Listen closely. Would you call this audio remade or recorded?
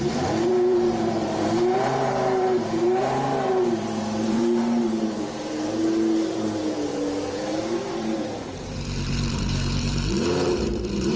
remade